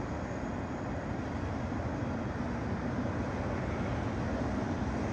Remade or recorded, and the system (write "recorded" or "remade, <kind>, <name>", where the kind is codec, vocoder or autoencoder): recorded